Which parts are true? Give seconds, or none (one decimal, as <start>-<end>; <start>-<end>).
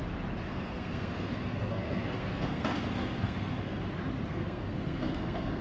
0.0-0.5; 3.8-4.3